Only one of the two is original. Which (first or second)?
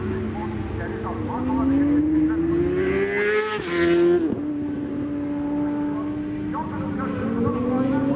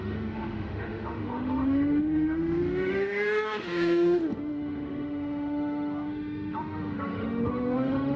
first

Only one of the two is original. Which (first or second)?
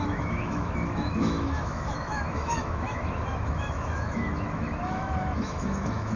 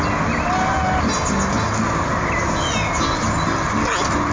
second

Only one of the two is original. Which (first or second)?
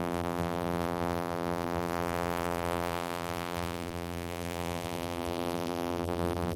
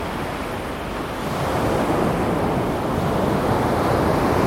second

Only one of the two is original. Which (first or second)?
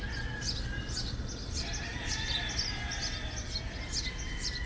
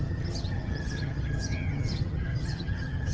first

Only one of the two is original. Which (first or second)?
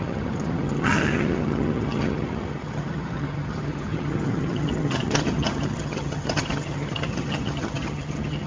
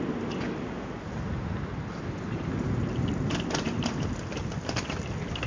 second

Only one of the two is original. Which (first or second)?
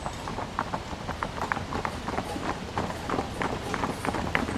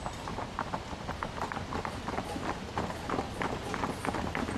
second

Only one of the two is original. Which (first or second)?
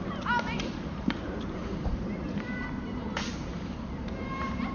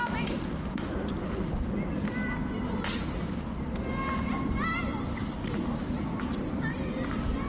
second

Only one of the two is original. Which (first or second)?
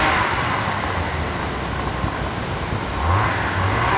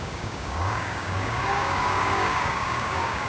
first